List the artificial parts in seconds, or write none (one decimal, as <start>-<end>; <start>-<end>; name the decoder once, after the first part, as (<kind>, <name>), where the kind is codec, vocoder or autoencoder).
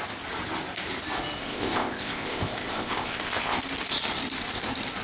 1.4-3.6 (codec, ZipCodec)